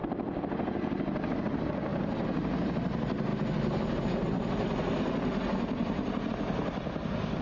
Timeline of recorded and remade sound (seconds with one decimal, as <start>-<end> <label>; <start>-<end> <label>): 0.0-1.9 recorded; 1.9-2.7 remade; 2.7-7.4 recorded